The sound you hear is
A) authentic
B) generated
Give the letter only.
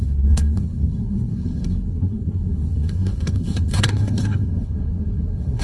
B